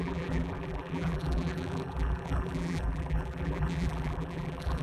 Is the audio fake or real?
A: fake